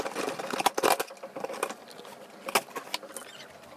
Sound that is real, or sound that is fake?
real